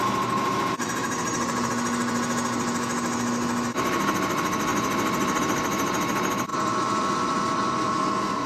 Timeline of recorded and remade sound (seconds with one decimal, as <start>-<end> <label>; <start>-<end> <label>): 0.0-0.8 recorded; 0.8-1.7 remade; 1.7-8.5 recorded